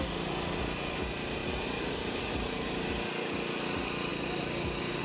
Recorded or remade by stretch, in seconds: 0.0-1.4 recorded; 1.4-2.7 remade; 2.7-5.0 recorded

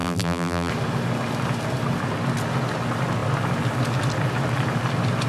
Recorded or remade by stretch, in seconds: 0.0-0.7 remade; 0.7-5.3 recorded

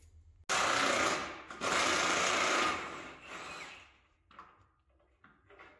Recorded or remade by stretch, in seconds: 0.0-1.2 recorded; 1.2-4.4 remade; 4.4-5.8 recorded

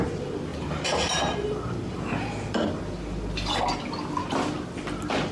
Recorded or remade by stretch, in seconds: 0.0-0.5 recorded; 0.5-2.8 remade; 2.8-5.3 recorded

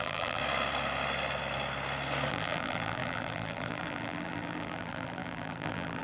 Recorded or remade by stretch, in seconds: 0.0-0.4 remade; 0.4-2.3 recorded; 2.3-6.0 remade